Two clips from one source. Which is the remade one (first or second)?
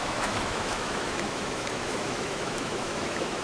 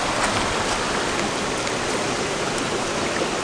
first